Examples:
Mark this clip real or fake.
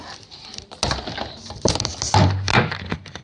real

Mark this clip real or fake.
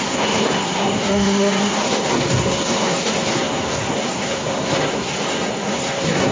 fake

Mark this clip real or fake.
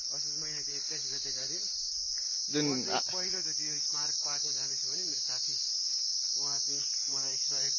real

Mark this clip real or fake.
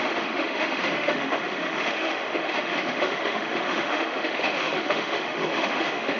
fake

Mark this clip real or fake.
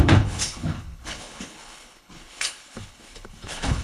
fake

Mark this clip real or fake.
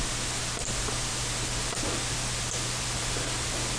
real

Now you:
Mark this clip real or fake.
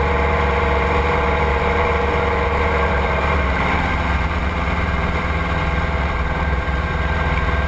fake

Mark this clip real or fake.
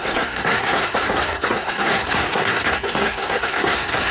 fake